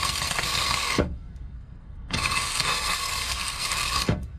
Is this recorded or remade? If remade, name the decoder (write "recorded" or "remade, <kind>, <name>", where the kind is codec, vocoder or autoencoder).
remade, codec, SNAC